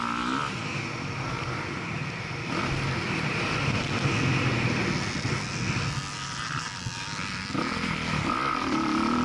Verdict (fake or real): real